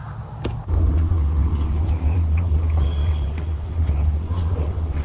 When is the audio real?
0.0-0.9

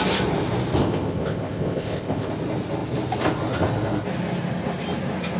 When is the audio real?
0.0-0.8; 2.3-5.4

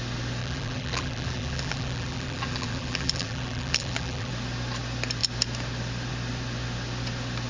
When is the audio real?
0.0-0.4; 4.3-7.5

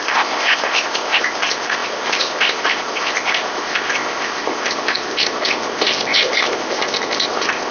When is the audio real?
none

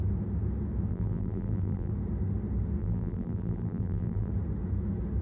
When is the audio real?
0.0-0.9; 1.9-2.8; 4.3-5.2

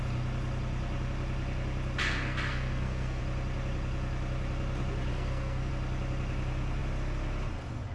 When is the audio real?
0.0-2.0; 3.2-5.1; 5.7-7.9